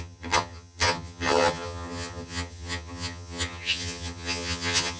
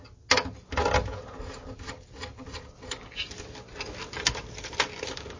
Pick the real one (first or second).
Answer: second